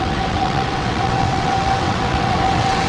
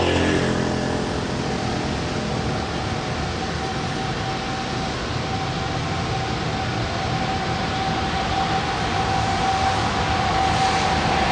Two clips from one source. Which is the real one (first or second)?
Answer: second